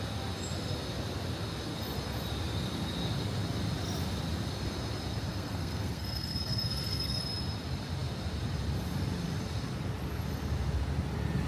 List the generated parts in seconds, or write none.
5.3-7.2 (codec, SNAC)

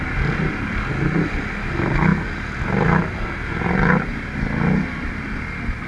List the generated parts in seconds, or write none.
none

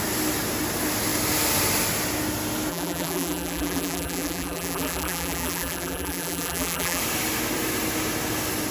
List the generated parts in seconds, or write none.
2.7-7.0 (vocoder, BigVGAN v2)

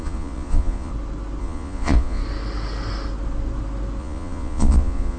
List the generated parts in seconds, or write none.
0.0-0.9 (vocoder, Vocos); 1.4-2.2; 4.0-5.2

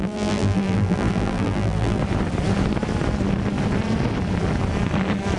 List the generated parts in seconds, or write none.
0.0-2.0 (vocoder, BigVGAN v2)

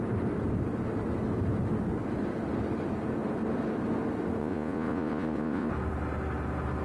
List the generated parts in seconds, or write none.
4.4-5.7 (vocoder, Vocos)

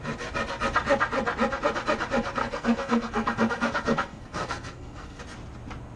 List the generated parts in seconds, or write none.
2.4-5.2 (codec, SNAC)

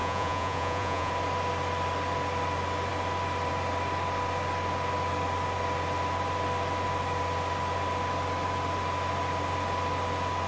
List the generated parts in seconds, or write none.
0.0-1.1 (vocoder, Vocos)